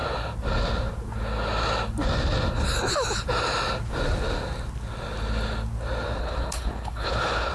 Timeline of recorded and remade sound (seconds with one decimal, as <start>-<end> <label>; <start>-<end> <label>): 0.0-6.2 recorded; 6.2-7.5 remade